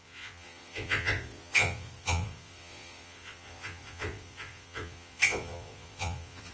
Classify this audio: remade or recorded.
remade